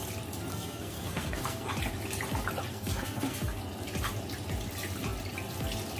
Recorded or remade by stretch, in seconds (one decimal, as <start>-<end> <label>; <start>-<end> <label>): 0.0-0.5 recorded; 0.5-1.7 remade; 1.7-2.7 recorded; 2.7-3.6 remade; 3.6-6.0 recorded